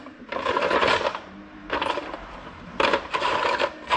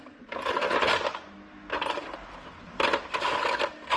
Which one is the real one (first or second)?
second